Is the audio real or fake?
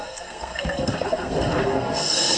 fake